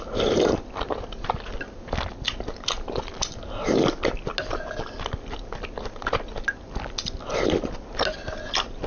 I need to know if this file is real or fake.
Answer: real